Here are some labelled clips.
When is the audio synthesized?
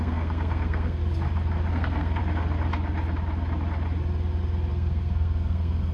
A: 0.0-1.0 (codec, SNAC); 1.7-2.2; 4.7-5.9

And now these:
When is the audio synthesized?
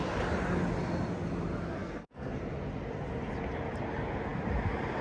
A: 1.8-2.4 (codec, SNAC)